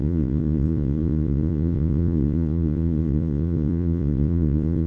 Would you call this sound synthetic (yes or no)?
yes